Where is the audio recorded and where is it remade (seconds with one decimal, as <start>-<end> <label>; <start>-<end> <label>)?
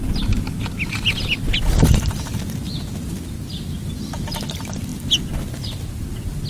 0.0-6.5 recorded